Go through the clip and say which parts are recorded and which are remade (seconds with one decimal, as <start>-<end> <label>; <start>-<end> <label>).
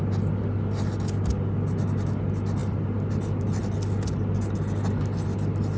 0.0-5.8 recorded